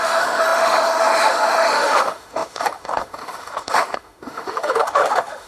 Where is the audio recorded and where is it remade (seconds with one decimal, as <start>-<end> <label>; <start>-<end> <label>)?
0.0-5.5 remade